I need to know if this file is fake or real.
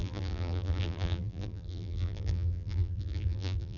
fake